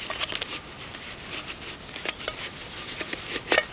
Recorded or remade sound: recorded